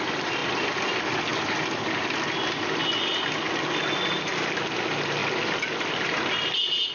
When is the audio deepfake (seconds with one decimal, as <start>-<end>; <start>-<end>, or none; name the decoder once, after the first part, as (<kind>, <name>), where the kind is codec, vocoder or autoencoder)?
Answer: none